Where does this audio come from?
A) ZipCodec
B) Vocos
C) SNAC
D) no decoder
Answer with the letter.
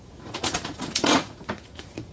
B